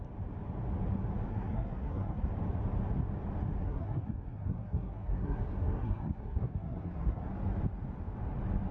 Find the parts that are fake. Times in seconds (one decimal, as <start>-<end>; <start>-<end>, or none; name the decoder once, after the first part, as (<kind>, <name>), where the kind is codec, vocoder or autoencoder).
1.3-2.3 (codec, SNAC); 3.6-7.3